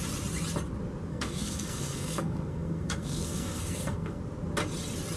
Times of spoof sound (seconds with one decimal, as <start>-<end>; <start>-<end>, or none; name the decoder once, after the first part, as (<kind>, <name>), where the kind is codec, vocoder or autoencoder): 1.1-4.2 (codec, SNAC)